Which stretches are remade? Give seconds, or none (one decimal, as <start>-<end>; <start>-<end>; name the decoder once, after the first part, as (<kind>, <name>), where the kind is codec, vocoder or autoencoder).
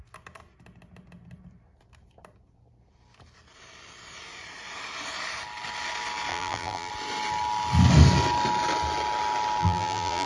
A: 6.3-6.9 (vocoder, BigVGAN v2); 9.6-10.3